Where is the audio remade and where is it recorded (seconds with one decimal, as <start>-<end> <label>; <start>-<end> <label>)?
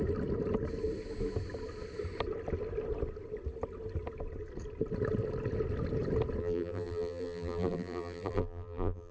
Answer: 0.0-6.4 recorded; 6.4-9.1 remade